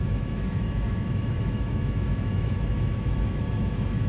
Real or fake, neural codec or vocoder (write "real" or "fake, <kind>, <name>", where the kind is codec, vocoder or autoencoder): fake, autoencoder, DAC-VAE